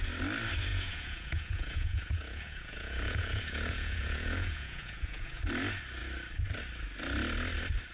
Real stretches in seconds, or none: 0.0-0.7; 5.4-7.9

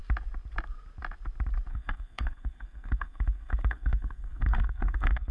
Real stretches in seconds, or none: 0.0-1.7

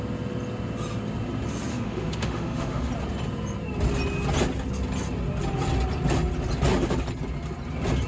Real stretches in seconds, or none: 0.0-1.7; 2.9-8.1